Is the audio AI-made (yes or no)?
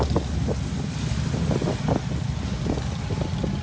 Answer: no